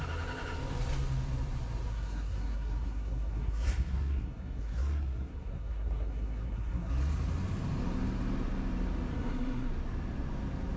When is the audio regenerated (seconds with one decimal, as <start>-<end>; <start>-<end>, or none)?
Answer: 1.9-6.9; 9.1-9.7